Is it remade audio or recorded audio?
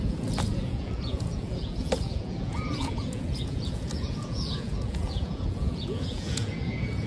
remade